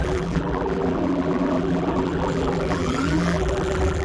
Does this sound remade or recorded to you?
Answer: remade